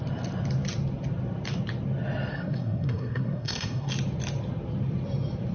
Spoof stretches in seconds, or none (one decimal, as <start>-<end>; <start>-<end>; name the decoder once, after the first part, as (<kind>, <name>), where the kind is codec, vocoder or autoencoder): 2.3-3.9 (codec, SNAC)